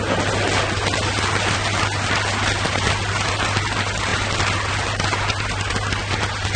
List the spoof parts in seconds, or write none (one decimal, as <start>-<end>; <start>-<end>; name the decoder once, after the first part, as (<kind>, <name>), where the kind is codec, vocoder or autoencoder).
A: none